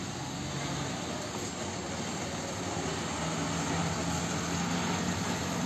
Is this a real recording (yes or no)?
yes